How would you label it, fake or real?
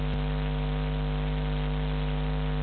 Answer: real